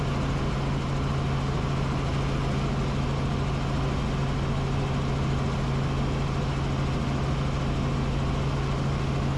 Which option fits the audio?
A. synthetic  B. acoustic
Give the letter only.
B